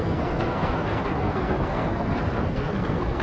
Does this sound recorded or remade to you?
remade